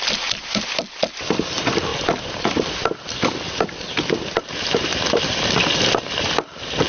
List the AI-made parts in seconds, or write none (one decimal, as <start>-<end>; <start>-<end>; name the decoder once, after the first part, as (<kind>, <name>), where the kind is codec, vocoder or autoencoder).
none